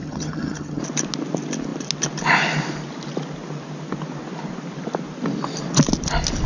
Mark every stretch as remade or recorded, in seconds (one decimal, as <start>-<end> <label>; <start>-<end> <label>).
0.0-0.8 remade; 0.8-6.5 recorded